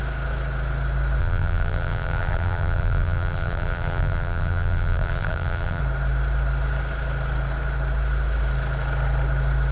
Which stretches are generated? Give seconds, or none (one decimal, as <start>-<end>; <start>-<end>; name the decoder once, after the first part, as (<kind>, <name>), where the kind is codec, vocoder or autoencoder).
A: 1.2-5.8 (vocoder, BigVGAN v2)